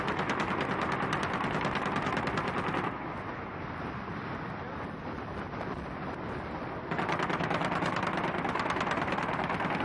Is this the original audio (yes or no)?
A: yes